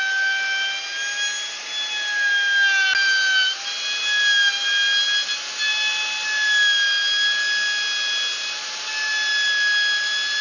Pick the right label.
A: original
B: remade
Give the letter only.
A